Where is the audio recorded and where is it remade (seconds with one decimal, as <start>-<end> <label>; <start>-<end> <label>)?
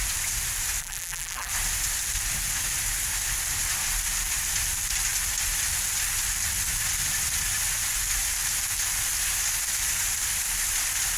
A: 0.0-0.8 recorded; 0.8-1.5 remade; 1.5-11.2 recorded